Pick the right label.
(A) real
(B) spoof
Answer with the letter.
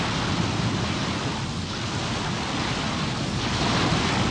A